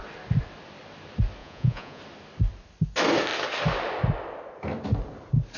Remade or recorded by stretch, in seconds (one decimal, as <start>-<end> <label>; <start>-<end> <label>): 0.0-1.4 recorded; 1.4-2.0 remade; 2.0-5.6 recorded